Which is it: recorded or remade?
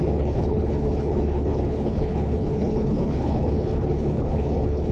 remade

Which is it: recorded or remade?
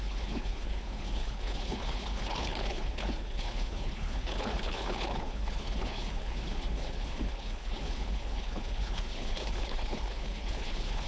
remade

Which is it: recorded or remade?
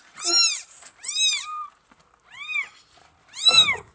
recorded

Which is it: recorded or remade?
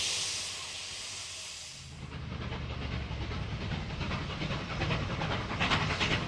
recorded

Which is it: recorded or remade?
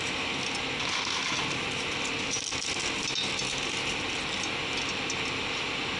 recorded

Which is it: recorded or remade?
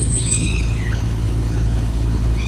remade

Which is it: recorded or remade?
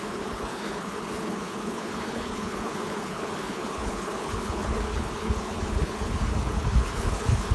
remade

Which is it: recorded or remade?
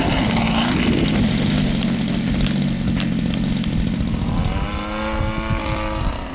recorded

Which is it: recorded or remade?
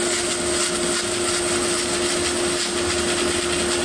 recorded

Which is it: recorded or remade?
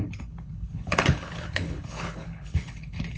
remade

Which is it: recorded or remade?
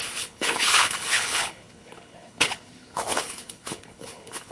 remade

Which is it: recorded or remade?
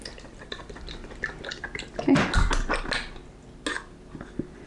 recorded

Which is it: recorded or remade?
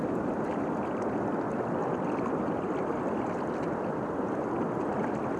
recorded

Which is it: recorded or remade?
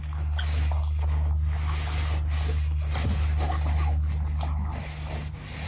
recorded